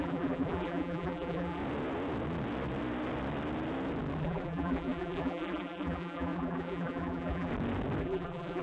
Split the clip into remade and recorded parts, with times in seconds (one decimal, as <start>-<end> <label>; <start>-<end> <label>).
0.0-1.6 remade; 1.6-4.2 recorded; 4.2-7.5 remade; 7.5-8.0 recorded; 8.0-8.6 remade